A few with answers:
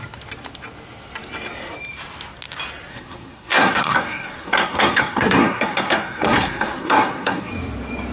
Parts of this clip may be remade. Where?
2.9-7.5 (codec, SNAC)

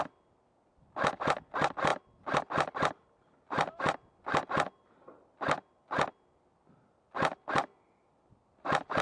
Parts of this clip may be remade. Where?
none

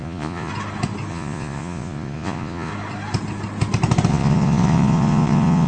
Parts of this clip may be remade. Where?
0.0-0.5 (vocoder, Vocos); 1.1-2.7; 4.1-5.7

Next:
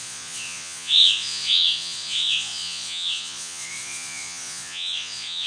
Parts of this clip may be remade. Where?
0.0-5.5 (vocoder, Vocos)

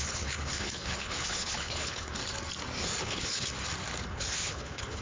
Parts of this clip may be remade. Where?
0.0-2.2 (codec, HILCodec); 3.0-3.5; 4.1-5.0